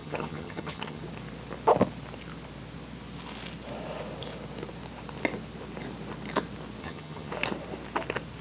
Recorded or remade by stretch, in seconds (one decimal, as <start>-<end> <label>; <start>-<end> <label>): 0.0-1.0 remade; 1.0-6.8 recorded; 6.8-7.3 remade; 7.3-8.4 recorded